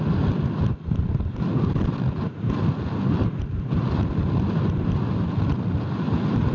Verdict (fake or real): real